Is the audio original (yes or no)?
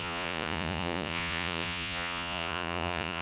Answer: no